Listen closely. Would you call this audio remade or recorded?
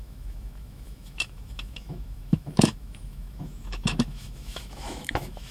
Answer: remade